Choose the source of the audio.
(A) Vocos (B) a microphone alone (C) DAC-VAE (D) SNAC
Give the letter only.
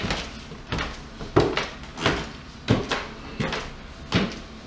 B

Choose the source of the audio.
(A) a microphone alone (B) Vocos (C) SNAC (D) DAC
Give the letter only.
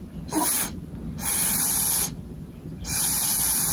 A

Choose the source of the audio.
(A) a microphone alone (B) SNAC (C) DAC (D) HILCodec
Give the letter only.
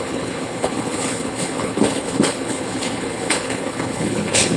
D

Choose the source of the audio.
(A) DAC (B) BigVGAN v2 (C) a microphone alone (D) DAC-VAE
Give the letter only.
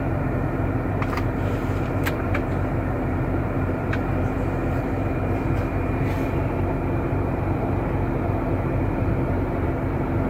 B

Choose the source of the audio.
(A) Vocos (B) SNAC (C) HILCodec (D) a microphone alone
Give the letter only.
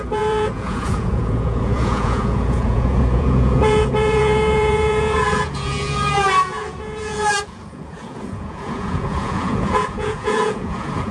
A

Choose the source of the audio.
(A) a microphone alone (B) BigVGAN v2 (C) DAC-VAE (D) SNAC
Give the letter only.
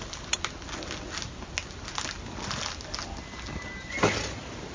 A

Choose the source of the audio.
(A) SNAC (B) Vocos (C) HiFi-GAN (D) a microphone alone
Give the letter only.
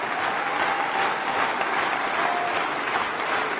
D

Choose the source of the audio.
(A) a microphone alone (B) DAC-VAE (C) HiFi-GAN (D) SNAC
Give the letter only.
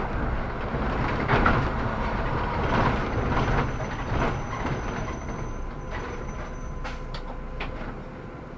A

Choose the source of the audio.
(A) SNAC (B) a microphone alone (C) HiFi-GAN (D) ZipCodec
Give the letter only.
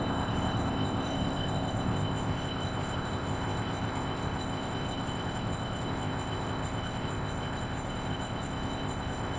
D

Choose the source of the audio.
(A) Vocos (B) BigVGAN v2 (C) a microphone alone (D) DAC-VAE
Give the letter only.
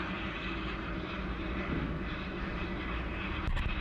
C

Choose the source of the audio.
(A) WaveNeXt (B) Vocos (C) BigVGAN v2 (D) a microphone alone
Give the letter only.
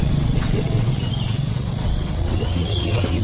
A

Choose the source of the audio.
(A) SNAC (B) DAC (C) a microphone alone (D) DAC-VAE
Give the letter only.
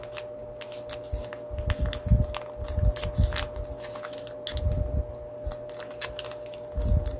C